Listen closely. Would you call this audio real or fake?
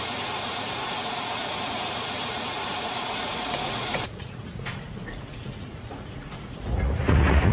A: fake